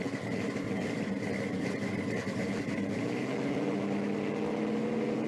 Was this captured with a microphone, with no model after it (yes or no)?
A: yes